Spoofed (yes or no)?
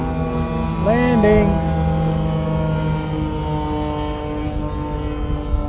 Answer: no